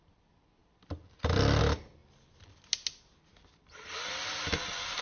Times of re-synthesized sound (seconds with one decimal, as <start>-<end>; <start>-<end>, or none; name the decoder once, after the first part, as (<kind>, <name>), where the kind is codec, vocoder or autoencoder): none